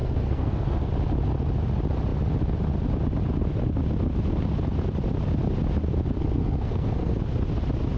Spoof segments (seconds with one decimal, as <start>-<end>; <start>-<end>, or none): 0.0-0.9; 6.2-7.2

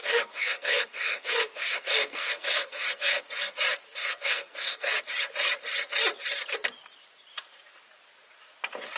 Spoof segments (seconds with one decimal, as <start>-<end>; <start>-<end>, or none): 0.0-3.2; 4.0-5.0